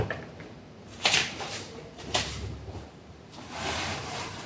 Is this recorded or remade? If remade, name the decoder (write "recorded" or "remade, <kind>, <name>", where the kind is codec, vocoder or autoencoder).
remade, vocoder, BigVGAN v2